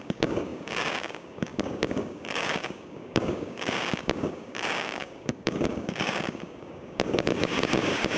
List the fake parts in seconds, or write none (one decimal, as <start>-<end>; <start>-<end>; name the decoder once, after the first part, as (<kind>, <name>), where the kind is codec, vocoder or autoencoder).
0.0-8.2 (codec, DAC)

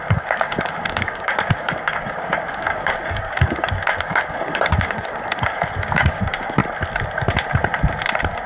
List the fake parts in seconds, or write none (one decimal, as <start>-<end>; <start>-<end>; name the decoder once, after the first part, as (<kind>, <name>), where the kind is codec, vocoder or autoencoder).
0.0-6.6 (codec, DAC)

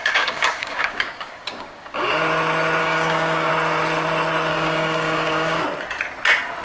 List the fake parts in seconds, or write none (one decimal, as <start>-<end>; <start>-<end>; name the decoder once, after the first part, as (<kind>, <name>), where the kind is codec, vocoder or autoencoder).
0.0-2.2 (codec, DAC); 2.8-3.5; 4.5-5.6

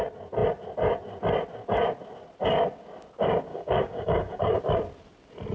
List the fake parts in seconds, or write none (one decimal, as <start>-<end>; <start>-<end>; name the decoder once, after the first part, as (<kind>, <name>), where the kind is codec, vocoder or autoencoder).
3.5-4.6 (codec, DAC)

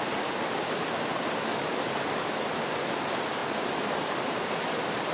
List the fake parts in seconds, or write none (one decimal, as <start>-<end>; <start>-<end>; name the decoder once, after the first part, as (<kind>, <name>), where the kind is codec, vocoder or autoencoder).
1.5-2.4 (codec, DAC)

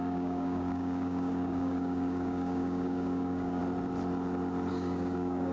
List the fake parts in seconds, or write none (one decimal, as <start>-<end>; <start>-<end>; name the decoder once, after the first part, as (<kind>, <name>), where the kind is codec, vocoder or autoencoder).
0.0-3.6 (codec, DAC); 4.7-5.5

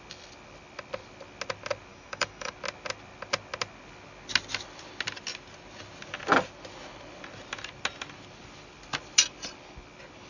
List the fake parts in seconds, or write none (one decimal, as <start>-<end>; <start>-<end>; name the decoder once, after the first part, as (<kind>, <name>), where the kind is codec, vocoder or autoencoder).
1.9-2.5 (codec, DAC)

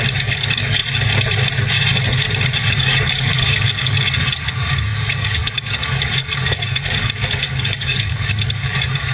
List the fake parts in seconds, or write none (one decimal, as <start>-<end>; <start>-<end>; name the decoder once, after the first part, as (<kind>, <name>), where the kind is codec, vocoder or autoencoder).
0.0-0.8 (codec, DAC); 2.7-9.1